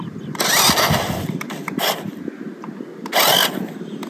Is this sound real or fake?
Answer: real